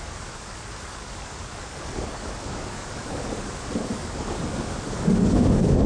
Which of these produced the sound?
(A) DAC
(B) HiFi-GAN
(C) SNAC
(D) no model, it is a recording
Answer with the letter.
A